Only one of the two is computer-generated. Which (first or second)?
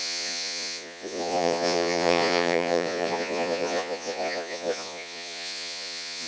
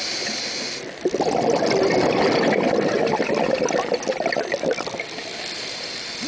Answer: first